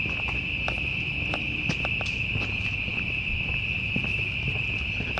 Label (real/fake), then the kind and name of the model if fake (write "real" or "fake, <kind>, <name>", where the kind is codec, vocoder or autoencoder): real